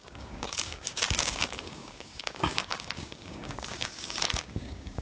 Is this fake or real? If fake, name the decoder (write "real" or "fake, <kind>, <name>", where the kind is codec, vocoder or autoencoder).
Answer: fake, codec, DAC